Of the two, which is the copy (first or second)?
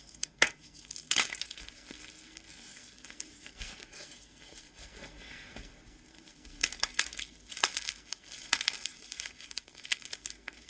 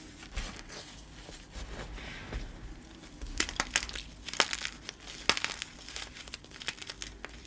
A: first